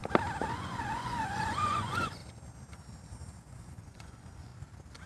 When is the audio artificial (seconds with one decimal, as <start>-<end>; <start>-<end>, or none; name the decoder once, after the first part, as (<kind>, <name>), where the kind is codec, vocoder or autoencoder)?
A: 0.5-2.2 (vocoder, Vocos); 3.4-4.5